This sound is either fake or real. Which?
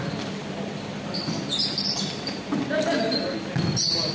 real